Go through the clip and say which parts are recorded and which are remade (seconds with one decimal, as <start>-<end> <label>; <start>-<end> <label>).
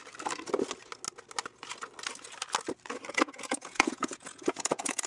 0.0-3.1 recorded; 3.1-5.1 remade